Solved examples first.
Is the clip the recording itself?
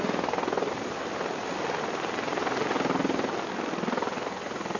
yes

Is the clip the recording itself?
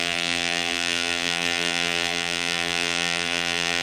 no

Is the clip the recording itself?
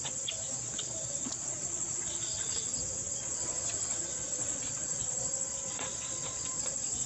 no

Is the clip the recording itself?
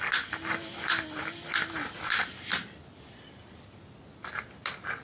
yes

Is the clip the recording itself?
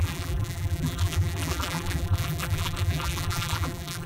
no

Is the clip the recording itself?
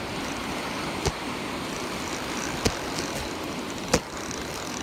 yes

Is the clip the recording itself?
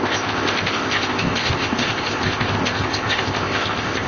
no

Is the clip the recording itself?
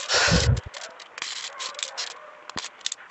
yes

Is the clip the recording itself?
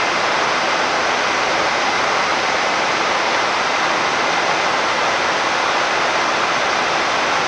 no